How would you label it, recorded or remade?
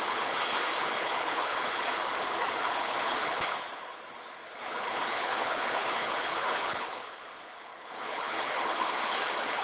remade